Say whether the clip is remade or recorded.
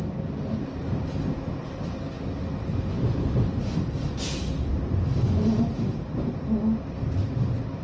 recorded